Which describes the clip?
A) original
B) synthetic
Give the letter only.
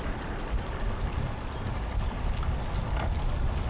A